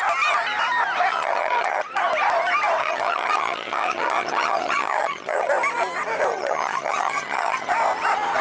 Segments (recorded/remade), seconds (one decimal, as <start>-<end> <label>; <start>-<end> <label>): 0.0-1.1 recorded; 1.1-1.9 remade; 1.9-2.8 recorded; 2.8-5.5 remade; 5.5-6.3 recorded; 6.3-7.7 remade; 7.7-8.4 recorded